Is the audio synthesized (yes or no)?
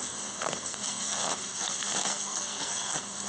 yes